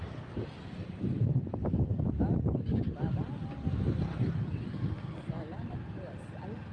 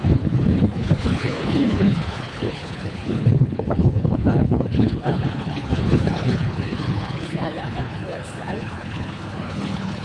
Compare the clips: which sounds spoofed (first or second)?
second